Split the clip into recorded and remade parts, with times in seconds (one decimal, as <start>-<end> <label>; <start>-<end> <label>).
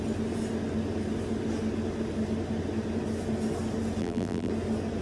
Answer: 0.0-4.0 recorded; 4.0-4.5 remade; 4.5-5.0 recorded